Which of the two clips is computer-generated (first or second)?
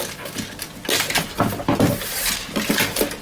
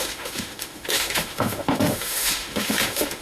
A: second